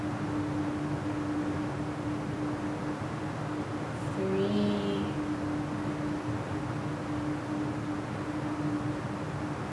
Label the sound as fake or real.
real